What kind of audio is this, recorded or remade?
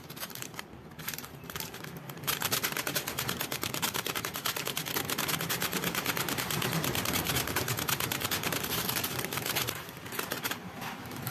remade